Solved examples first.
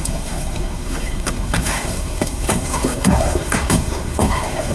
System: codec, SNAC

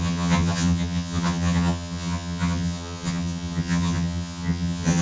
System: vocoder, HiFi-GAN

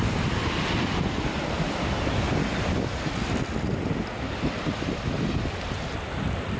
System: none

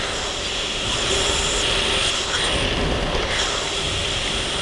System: none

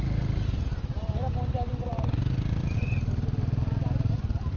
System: none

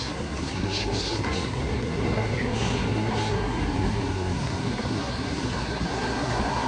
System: codec, SNAC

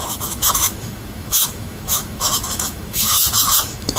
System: autoencoder, DAC-VAE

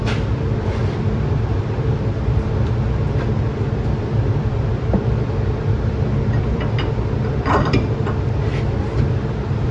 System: vocoder, BigVGAN v2